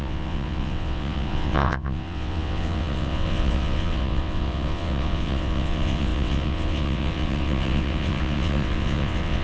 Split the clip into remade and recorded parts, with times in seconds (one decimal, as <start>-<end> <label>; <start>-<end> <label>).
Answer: 0.0-9.4 remade